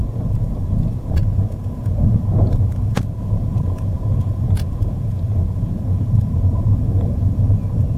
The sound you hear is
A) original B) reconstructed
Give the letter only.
B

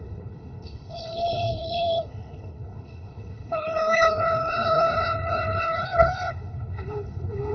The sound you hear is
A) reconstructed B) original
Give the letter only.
A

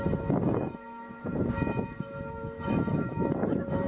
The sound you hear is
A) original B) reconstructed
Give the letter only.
B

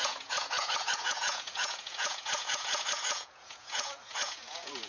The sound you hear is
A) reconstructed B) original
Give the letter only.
A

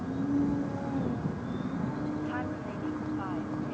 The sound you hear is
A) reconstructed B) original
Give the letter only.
B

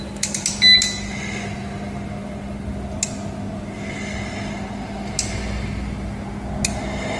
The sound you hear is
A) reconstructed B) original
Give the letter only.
B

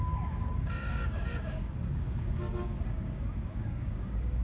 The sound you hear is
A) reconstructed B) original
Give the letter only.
A